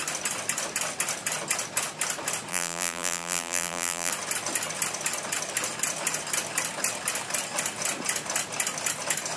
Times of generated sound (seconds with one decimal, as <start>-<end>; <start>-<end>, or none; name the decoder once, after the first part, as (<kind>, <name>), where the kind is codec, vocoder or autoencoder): 2.5-4.1 (vocoder, BigVGAN v2)